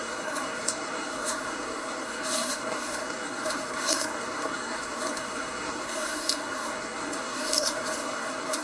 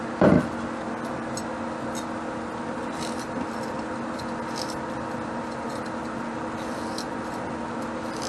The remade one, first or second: first